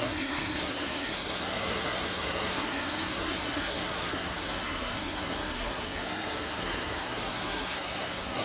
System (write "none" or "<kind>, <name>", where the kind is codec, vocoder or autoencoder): codec, SNAC